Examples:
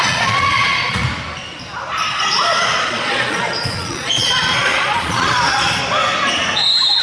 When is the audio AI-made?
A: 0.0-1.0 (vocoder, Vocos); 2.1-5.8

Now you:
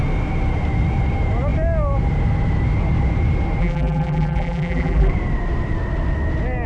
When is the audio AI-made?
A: 3.6-5.1 (vocoder, BigVGAN v2)

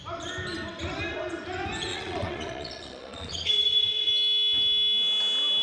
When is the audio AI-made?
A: 1.9-4.1 (vocoder, Vocos)

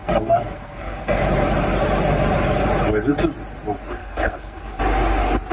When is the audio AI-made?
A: 0.0-1.2 (codec, SNAC); 4.0-4.8

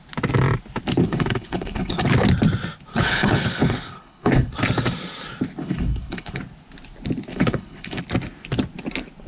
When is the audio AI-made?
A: 1.0-2.1 (codec, HILCodec); 2.9-4.5; 5.6-6.4; 7.3-8.0

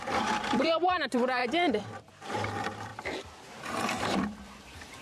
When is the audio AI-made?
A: 0.0-2.9 (vocoder, BigVGAN v2); 3.5-5.0

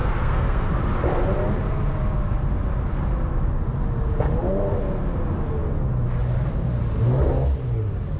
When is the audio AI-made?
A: 0.0-0.7 (codec, SNAC)

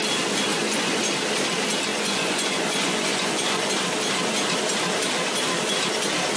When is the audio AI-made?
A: 0.5-1.0 (vocoder, Vocos); 1.9-3.7